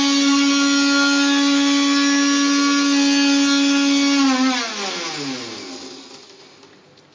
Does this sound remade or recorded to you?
recorded